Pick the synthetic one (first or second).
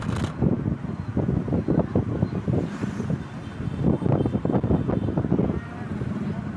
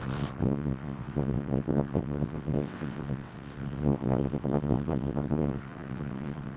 second